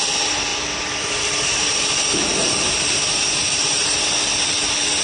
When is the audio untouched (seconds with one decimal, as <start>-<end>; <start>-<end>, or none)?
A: 0.0-1.5; 4.5-5.0